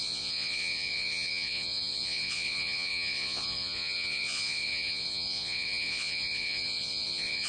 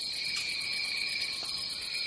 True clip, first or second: second